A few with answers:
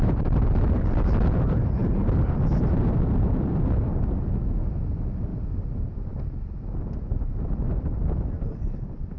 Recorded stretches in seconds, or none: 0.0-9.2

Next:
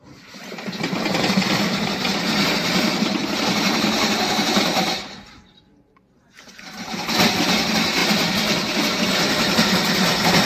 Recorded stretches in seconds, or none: 0.0-2.1; 6.5-10.5

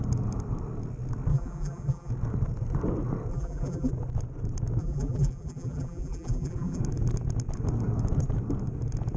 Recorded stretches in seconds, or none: 0.0-1.3; 2.1-3.3; 3.9-4.8; 6.8-9.2